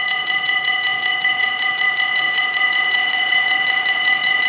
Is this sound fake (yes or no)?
yes